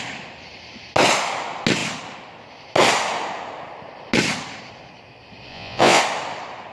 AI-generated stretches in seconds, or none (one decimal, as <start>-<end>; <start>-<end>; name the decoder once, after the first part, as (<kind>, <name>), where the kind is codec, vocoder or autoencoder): 5.5-6.0 (vocoder, Vocos)